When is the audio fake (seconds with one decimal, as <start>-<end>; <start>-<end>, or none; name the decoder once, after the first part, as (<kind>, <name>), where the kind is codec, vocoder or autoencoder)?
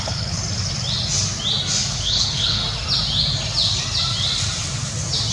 0.0-0.4 (codec, HILCodec); 1.9-2.6